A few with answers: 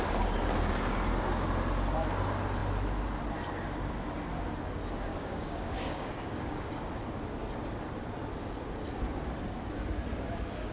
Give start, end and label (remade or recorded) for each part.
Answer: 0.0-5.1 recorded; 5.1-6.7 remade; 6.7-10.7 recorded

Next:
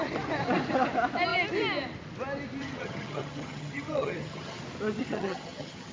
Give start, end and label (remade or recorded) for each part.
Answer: 0.0-2.6 recorded; 2.6-4.6 remade; 4.6-5.0 recorded; 5.0-5.9 remade

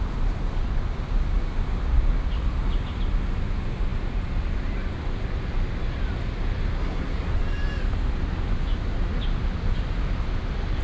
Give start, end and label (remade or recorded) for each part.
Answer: 0.0-6.8 recorded; 6.8-7.4 remade; 7.4-10.8 recorded

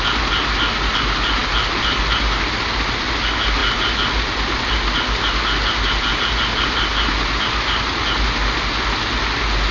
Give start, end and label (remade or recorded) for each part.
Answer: 0.0-9.7 recorded

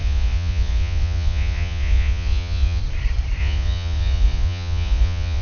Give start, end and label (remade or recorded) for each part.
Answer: 0.0-2.8 remade; 2.8-3.4 recorded; 3.4-5.4 remade